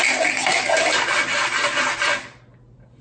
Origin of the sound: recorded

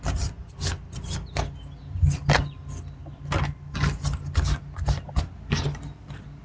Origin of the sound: recorded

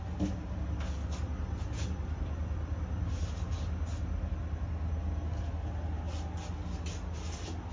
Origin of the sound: recorded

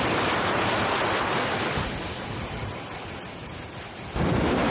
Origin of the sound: recorded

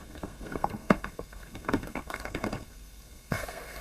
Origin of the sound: remade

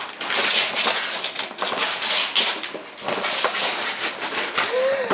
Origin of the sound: recorded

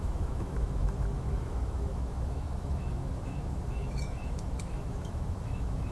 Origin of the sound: remade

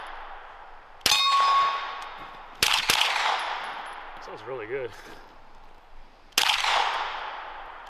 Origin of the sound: recorded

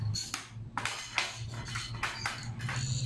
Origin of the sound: recorded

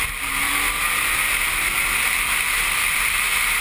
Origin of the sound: recorded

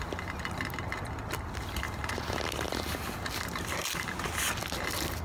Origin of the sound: recorded